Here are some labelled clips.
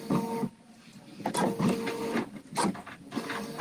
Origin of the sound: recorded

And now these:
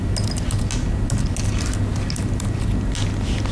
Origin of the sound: recorded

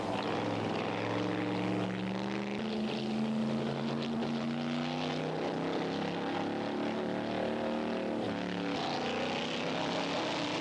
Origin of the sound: recorded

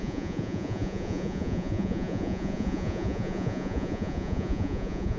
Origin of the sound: remade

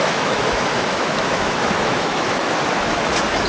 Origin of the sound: remade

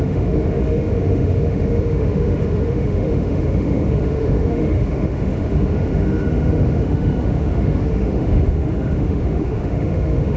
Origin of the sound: remade